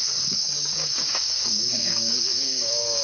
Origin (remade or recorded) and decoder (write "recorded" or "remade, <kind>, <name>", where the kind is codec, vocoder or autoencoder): remade, codec, DAC